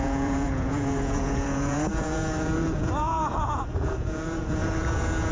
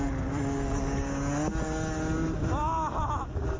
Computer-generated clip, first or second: first